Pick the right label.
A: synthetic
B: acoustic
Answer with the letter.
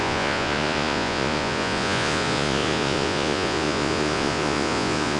A